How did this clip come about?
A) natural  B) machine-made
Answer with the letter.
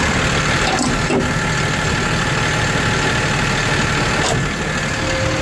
A